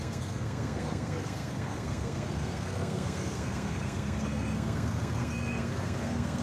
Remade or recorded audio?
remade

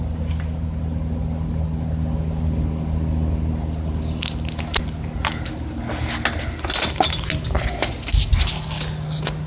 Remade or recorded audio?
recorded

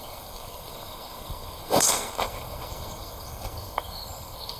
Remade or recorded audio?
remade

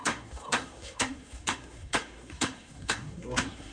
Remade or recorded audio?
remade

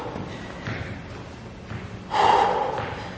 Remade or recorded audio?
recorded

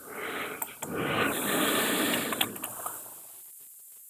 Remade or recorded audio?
recorded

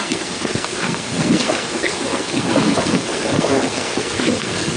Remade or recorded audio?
remade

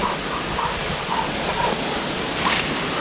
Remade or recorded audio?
recorded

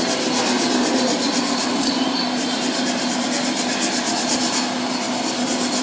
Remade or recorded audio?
recorded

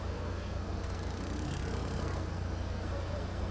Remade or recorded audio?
remade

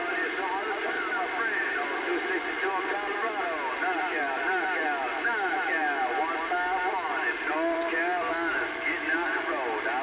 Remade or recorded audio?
recorded